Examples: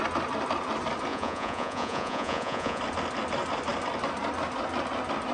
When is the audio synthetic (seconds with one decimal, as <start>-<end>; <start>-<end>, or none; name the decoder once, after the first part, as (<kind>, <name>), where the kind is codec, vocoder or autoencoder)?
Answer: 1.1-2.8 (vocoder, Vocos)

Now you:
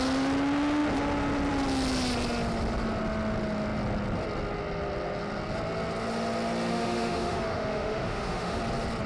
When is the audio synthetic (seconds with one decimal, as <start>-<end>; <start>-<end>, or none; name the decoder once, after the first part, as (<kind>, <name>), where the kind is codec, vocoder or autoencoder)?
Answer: 6.7-8.6 (autoencoder, DAC-VAE)

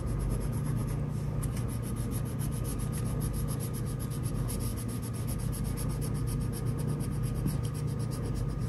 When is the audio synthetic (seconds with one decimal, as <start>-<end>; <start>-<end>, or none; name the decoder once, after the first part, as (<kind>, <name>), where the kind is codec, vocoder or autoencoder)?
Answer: none

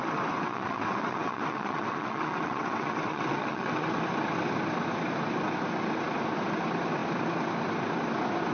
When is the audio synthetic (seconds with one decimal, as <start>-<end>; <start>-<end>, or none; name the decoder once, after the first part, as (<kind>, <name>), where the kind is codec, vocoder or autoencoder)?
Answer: 0.0-4.0 (vocoder, WaveNeXt)

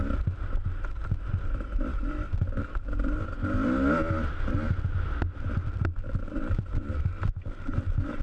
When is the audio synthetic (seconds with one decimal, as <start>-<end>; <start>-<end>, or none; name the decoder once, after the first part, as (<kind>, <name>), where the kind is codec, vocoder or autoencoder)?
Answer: none

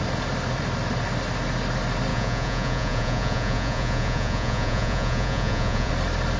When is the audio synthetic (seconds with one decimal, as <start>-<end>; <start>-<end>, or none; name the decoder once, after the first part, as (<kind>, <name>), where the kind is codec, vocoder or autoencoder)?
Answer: 2.1-5.9 (vocoder, Vocos)

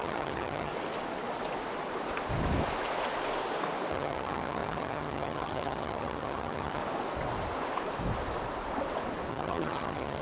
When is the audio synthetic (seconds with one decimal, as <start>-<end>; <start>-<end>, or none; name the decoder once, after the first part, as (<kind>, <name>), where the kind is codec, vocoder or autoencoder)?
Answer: 0.0-0.7 (vocoder, HiFi-GAN); 3.9-6.8; 9.3-10.2

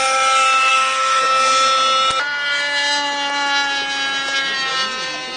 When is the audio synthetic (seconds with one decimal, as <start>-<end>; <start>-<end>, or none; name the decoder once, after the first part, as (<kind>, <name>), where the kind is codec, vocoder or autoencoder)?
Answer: 0.7-1.2 (codec, SNAC)